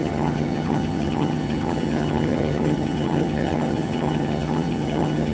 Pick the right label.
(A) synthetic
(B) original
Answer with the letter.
A